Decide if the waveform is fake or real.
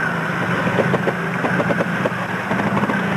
real